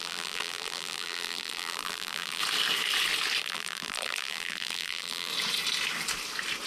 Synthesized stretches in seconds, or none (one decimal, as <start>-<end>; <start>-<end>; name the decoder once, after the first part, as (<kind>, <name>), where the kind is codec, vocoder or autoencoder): 0.0-2.4 (vocoder, BigVGAN v2); 3.4-5.3